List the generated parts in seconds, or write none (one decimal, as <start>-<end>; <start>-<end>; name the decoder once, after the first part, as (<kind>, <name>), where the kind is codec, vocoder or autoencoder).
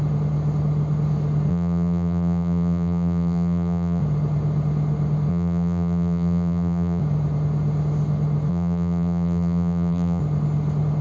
1.5-4.0 (vocoder, BigVGAN v2); 5.3-7.0; 8.5-10.2